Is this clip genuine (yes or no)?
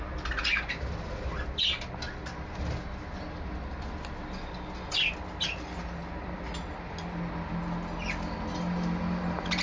yes